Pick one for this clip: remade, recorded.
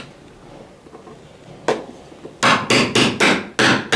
recorded